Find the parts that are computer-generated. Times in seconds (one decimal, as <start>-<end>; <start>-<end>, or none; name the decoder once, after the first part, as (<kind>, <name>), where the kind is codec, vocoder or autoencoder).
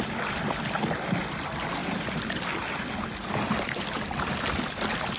none